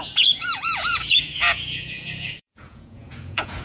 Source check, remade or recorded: remade